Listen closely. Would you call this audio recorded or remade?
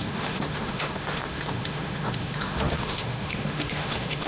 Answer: remade